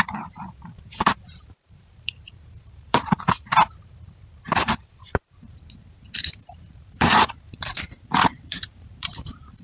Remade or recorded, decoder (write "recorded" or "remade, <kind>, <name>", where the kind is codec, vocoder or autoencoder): remade, vocoder, BigVGAN v2